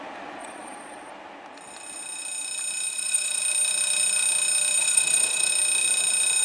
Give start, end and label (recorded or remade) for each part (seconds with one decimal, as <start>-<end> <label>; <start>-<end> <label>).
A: 0.0-0.4 recorded; 0.4-1.1 remade; 1.1-2.9 recorded; 2.9-3.4 remade; 3.4-4.8 recorded; 4.8-5.5 remade; 5.5-6.4 recorded